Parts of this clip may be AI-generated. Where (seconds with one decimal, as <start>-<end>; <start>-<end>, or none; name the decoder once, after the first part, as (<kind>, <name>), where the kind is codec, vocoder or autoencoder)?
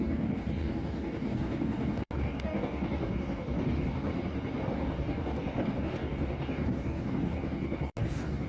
0.0-4.1 (codec, DAC); 4.7-8.5